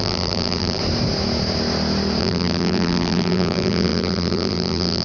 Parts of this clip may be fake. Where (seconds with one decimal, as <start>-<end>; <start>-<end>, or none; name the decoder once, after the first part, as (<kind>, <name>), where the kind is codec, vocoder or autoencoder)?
0.0-0.8 (vocoder, BigVGAN v2); 2.2-5.0